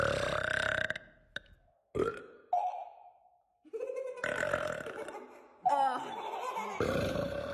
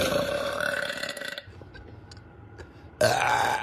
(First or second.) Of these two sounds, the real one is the first